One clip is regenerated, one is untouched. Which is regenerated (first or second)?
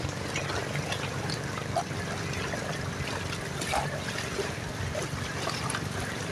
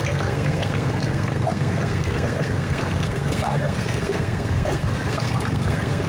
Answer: second